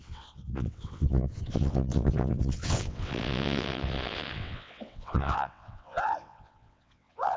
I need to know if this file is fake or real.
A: fake